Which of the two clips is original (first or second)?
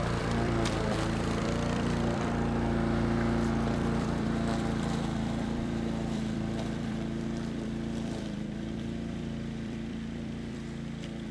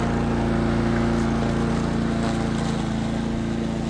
second